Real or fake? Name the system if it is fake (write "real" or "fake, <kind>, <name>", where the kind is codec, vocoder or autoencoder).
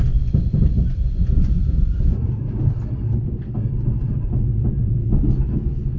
real